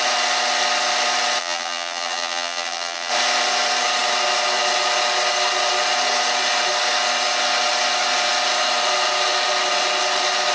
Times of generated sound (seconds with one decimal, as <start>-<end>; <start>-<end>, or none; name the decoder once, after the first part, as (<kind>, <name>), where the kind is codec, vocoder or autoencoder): 1.4-3.1 (vocoder, BigVGAN v2)